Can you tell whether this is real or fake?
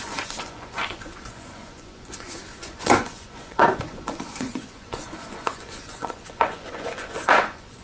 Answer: fake